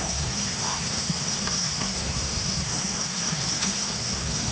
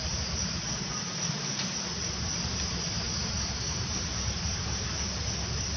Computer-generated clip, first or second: first